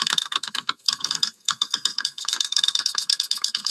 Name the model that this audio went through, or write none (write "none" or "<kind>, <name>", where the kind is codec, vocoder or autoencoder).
codec, SNAC